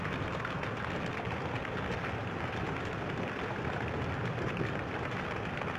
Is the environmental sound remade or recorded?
recorded